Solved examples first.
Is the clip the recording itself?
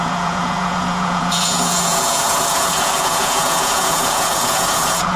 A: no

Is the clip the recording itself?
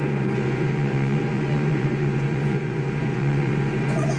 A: no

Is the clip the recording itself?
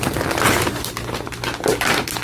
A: yes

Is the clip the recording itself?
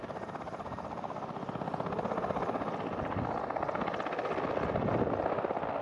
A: yes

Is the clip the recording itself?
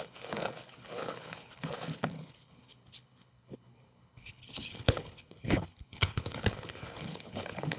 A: no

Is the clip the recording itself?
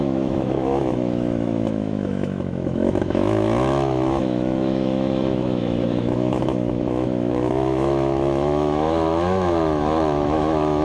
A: no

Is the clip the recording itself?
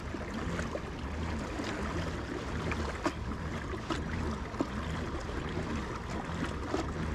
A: yes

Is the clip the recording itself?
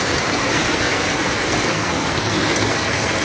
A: no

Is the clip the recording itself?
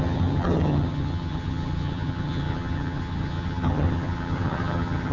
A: no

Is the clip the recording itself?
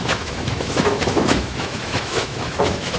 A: no